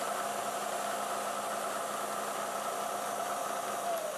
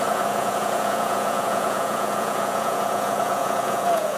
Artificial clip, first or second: second